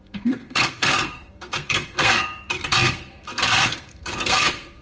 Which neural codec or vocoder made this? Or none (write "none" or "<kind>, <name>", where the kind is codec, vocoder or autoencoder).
codec, SNAC